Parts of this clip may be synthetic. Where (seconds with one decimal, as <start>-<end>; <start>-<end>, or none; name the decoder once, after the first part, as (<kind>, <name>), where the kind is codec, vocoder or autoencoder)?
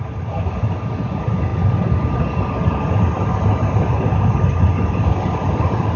none